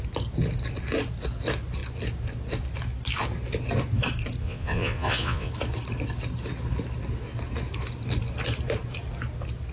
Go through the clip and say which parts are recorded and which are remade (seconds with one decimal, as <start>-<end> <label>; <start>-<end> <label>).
0.0-4.4 recorded; 4.4-5.5 remade; 5.5-9.7 recorded